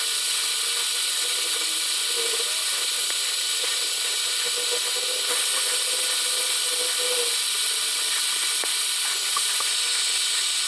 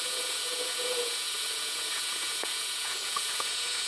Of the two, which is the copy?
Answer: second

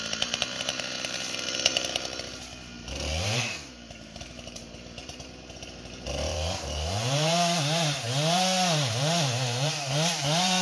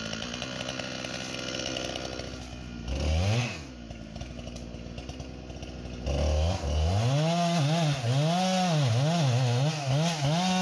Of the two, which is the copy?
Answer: first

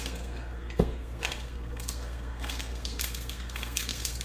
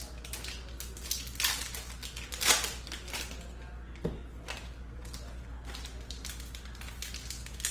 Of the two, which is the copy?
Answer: first